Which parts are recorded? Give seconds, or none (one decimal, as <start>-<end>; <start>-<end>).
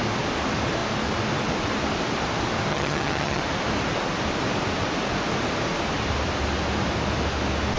0.0-2.7; 3.4-7.8